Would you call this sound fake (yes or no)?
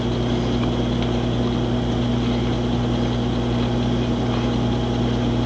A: no